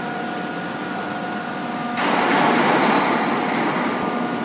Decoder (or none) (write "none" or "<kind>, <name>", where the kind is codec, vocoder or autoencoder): none